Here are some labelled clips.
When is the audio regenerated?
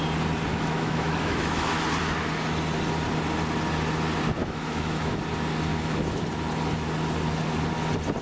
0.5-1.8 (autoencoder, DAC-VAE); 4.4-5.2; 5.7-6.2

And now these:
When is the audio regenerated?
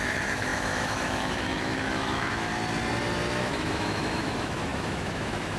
0.0-2.5 (autoencoder, DAC-VAE); 3.4-5.6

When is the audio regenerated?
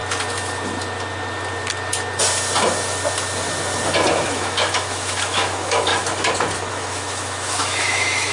4.1-5.9 (autoencoder, DAC-VAE); 6.7-8.3